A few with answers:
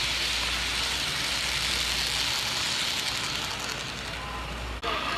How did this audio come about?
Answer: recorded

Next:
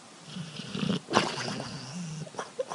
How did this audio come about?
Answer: recorded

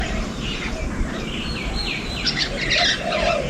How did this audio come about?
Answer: recorded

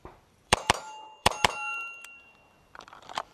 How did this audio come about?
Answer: remade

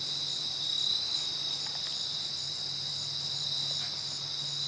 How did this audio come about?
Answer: recorded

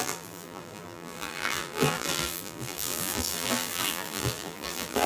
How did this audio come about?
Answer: remade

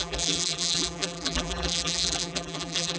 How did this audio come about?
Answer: remade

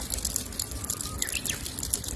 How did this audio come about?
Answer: remade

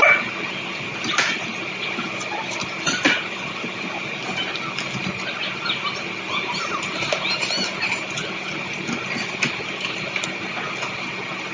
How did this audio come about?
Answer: recorded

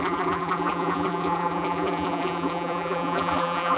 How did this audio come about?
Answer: remade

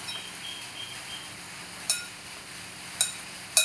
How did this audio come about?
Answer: recorded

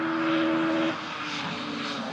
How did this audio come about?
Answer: recorded